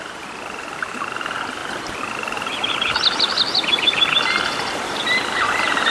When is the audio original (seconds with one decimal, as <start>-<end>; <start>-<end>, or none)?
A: 0.0-5.9